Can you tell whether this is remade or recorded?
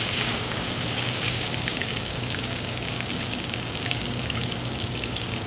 remade